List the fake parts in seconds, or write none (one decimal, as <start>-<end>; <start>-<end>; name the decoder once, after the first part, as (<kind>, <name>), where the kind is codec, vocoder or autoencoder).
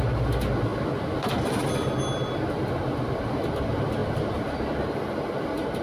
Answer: none